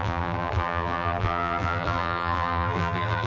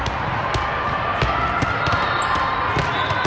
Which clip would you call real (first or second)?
second